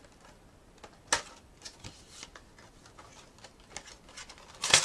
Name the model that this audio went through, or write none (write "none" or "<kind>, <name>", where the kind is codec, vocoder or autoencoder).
none